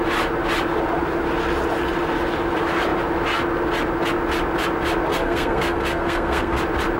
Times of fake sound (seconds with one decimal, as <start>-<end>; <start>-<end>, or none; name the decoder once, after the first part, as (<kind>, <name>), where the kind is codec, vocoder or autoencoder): 5.1-6.6 (codec, SNAC)